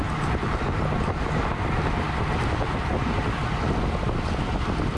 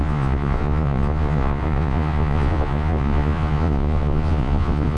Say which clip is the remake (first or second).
second